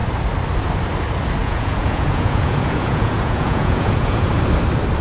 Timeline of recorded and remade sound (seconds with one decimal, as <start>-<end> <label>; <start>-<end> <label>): 0.0-1.4 recorded; 1.4-4.3 remade; 4.3-5.0 recorded